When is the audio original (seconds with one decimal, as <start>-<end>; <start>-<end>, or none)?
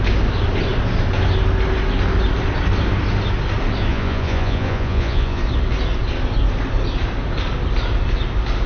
0.0-3.9; 5.4-8.7